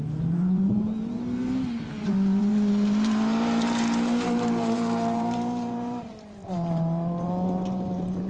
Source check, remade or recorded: remade